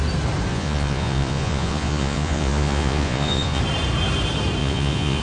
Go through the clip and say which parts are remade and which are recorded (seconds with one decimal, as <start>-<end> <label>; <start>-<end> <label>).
0.0-0.5 recorded; 0.5-3.6 remade; 3.6-4.6 recorded; 4.6-5.2 remade